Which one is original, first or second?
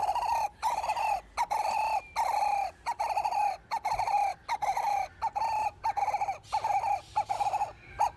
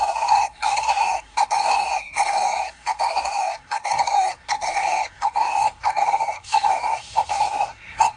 first